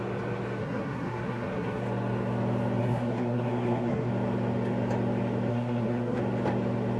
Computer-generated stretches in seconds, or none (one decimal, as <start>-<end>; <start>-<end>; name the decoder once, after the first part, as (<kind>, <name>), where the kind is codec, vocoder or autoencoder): 0.6-1.8 (codec, SNAC); 2.8-4.1; 5.5-6.2